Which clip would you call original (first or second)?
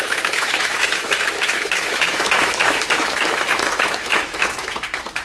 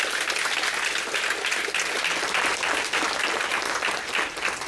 second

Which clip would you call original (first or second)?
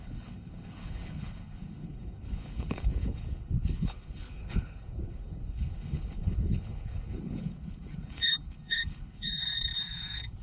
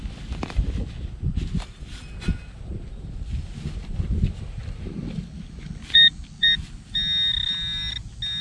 second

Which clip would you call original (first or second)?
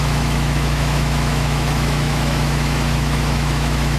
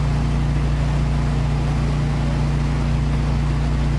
second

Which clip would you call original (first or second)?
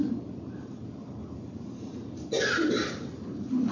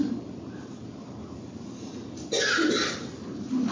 second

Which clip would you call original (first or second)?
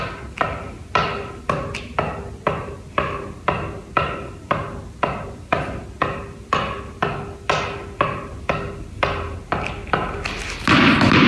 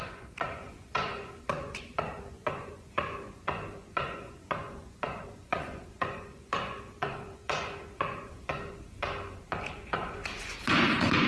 first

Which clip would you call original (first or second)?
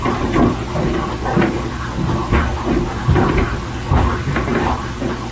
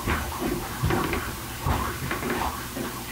first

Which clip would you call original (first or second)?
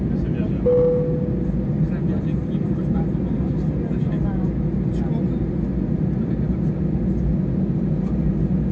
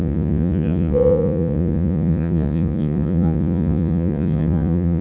first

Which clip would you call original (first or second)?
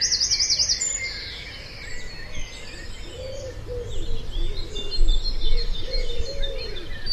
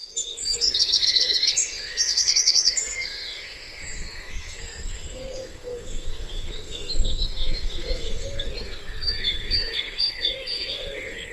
first